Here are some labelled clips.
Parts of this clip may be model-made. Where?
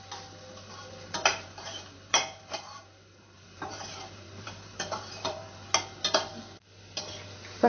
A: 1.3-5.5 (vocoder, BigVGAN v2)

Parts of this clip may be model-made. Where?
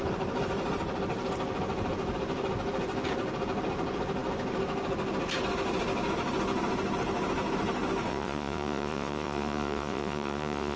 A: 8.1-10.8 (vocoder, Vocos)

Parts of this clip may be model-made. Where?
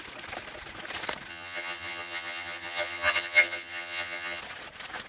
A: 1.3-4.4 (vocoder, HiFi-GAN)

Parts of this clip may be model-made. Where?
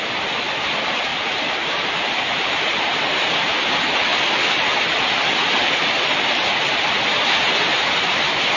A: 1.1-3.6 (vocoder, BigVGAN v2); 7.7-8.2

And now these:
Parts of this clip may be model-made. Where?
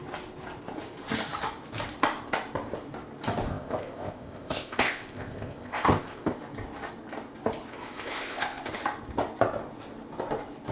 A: 3.5-6.4 (codec, ZipCodec); 7.7-8.7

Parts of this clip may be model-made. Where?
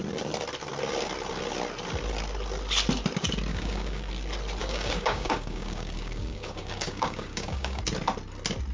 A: 3.5-4.1 (codec, DAC); 4.6-7.8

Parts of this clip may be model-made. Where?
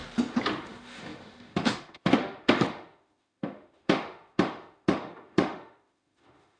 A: 0.6-6.6 (autoencoder, DAC-VAE)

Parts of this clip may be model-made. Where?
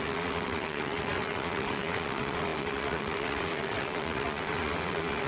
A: 0.0-5.3 (vocoder, WaveNeXt)